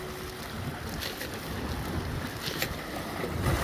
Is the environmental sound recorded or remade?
recorded